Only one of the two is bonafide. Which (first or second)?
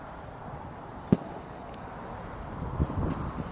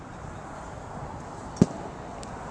second